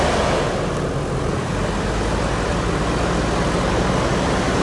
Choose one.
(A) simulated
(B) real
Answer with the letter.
B